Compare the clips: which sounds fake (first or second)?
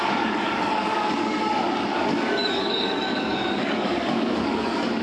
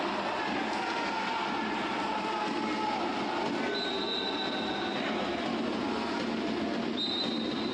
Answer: first